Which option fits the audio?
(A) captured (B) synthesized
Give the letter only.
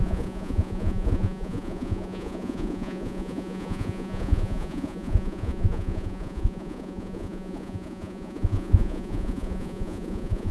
B